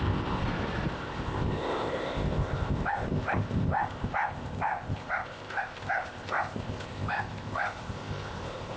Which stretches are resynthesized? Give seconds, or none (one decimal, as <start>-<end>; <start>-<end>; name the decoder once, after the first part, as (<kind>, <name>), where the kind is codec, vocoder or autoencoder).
0.0-0.4 (codec, ZipCodec); 0.9-8.8